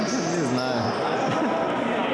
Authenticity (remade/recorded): recorded